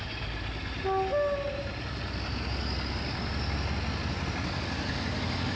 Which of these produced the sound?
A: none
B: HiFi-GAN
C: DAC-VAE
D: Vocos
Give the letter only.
A